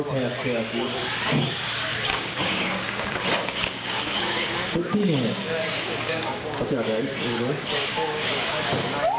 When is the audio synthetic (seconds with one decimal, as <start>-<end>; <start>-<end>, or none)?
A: 1.9-7.1; 7.9-8.6